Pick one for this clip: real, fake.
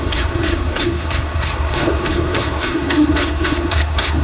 fake